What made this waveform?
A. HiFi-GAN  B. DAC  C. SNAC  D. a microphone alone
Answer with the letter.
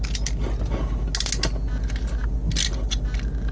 D